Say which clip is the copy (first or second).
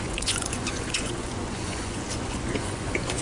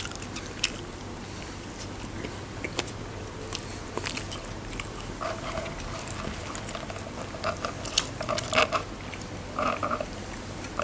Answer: first